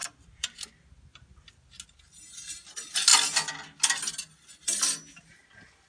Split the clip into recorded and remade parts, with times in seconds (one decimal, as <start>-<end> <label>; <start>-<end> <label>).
0.0-0.7 remade; 0.7-5.9 recorded